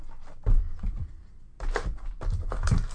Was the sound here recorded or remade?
recorded